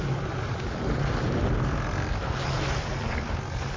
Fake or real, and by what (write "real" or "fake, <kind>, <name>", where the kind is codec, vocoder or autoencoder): real